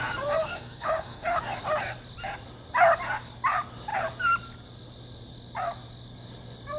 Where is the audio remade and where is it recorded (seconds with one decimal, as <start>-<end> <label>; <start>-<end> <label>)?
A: 0.0-0.4 recorded; 0.4-1.4 remade; 1.4-6.8 recorded